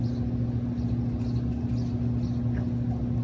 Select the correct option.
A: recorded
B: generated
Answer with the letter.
A